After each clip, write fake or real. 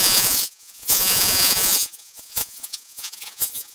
fake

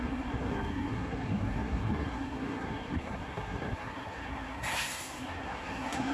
fake